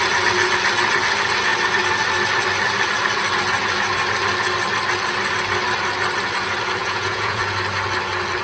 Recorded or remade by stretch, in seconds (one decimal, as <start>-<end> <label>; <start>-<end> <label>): 0.0-6.8 recorded; 6.8-7.4 remade; 7.4-8.4 recorded